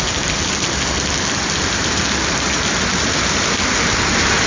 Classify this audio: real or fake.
real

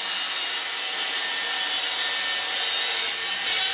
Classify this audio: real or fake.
real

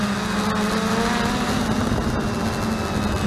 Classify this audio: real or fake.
real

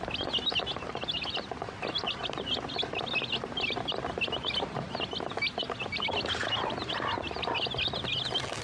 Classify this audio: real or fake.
real